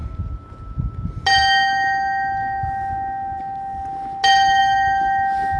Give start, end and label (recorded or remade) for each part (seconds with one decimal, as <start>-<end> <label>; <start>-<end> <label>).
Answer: 0.0-5.6 recorded